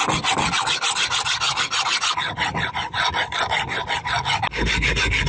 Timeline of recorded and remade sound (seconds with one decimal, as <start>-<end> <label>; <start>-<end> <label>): 0.0-5.3 recorded

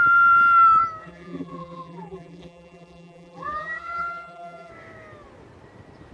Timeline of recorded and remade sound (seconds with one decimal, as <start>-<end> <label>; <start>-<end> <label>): 0.0-1.0 recorded; 1.0-4.7 remade; 4.7-6.1 recorded

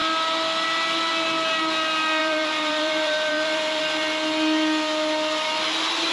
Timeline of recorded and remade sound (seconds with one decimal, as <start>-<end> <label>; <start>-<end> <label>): 0.0-2.2 recorded; 2.2-3.8 remade; 3.8-6.1 recorded

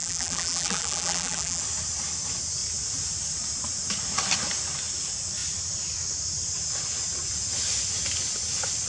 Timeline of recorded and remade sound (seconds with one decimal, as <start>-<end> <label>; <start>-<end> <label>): 0.0-1.6 remade; 1.6-8.9 recorded

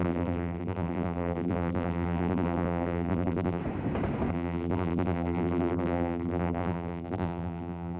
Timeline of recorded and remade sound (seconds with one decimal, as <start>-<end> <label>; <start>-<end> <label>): 0.0-3.6 remade; 3.6-4.3 recorded; 4.3-8.0 remade